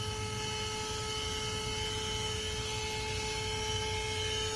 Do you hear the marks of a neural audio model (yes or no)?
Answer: no